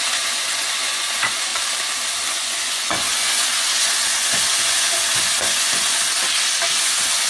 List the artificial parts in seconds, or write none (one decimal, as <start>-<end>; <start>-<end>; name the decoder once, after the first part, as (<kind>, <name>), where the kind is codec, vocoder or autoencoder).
0.0-1.5 (vocoder, Vocos); 2.3-6.0; 6.8-7.3